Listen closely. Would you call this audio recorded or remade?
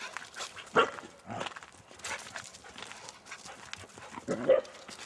recorded